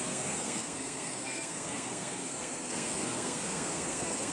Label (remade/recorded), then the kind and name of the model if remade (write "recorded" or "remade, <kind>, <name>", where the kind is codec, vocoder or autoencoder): remade, codec, SNAC